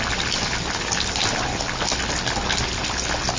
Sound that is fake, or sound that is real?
real